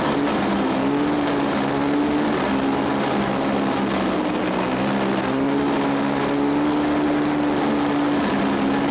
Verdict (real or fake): real